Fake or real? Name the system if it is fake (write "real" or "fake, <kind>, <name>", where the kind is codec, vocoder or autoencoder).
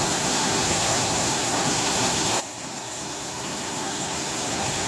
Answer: fake, codec, SNAC